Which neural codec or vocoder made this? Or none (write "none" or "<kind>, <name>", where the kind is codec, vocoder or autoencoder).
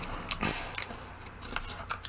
none